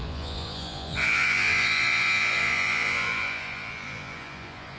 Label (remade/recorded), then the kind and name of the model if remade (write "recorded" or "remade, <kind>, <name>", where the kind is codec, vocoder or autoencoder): remade, vocoder, Vocos